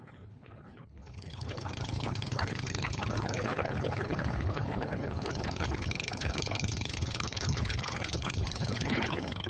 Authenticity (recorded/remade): remade